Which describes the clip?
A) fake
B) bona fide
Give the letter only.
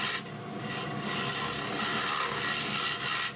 B